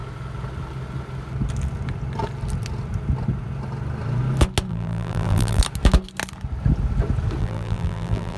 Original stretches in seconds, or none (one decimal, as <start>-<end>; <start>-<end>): 0.0-4.7; 5.6-7.4